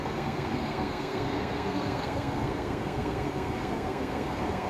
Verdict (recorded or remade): remade